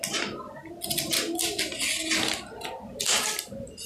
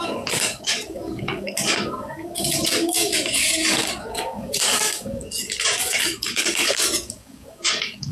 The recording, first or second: first